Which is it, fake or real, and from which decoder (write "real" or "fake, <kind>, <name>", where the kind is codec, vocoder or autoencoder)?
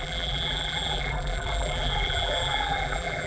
fake, vocoder, BigVGAN v2